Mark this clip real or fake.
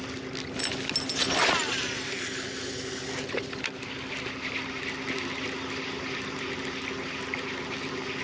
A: real